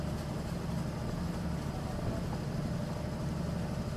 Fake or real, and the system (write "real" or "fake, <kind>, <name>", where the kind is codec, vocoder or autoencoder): real